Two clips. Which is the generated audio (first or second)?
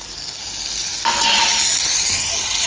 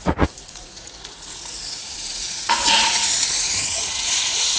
second